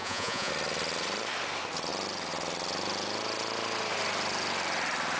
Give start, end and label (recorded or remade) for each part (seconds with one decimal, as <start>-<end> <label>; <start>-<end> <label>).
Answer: 0.0-0.5 remade; 0.5-5.2 recorded

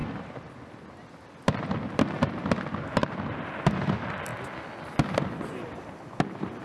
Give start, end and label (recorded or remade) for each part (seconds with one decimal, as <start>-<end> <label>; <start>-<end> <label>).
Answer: 0.0-6.6 recorded

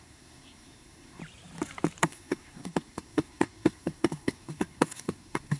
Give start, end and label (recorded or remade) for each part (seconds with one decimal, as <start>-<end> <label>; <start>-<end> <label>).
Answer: 0.0-1.2 remade; 1.2-2.0 recorded; 2.0-5.6 remade